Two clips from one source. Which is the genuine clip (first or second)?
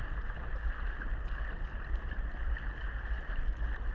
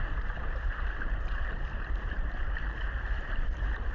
first